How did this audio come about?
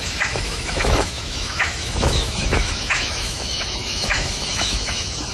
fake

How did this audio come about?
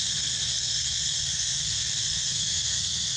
fake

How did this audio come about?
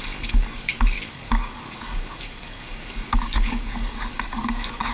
fake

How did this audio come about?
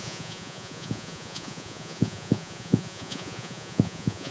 fake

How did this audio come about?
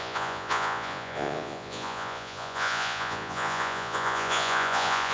fake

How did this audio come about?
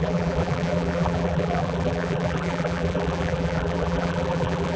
fake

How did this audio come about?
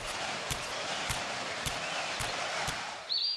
fake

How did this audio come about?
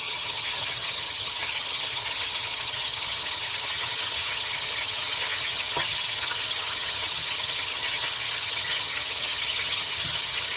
fake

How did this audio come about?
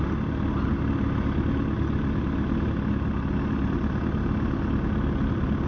real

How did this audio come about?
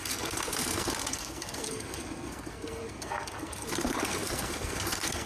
fake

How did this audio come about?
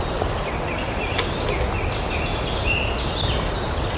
real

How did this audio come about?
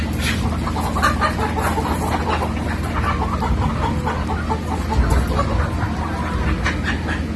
real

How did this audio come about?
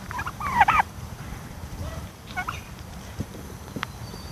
fake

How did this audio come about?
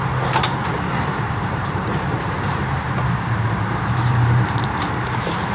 fake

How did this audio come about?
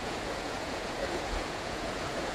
fake